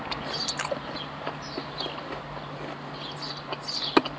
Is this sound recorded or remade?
recorded